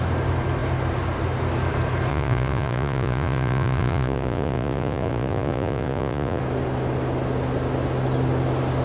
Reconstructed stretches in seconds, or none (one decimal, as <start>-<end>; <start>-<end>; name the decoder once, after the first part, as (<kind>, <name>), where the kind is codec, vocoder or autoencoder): 2.1-6.4 (vocoder, Vocos)